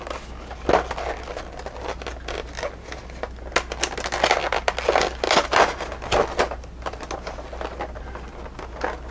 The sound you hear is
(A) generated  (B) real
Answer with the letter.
B